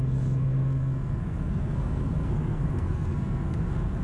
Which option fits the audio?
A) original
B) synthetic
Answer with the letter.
B